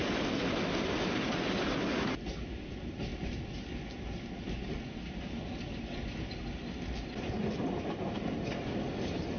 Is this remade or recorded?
recorded